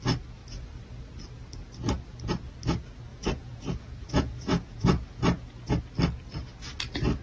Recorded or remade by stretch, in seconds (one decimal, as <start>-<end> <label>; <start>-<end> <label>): 0.0-3.1 recorded; 3.1-5.7 remade; 5.7-7.2 recorded